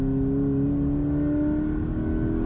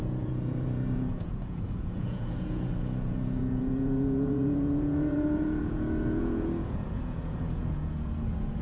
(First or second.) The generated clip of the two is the second